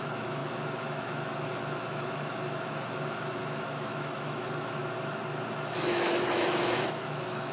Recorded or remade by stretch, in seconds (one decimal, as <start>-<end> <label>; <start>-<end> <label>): 0.0-4.8 remade; 4.8-5.7 recorded; 5.7-7.5 remade